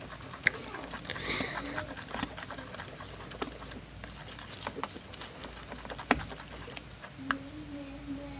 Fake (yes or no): no